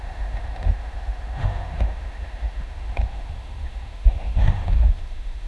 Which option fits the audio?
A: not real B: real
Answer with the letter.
A